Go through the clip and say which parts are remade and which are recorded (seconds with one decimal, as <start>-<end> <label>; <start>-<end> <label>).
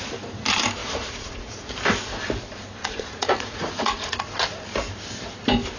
0.0-0.8 recorded; 0.8-1.7 remade; 1.7-2.8 recorded; 2.8-4.2 remade; 4.2-5.8 recorded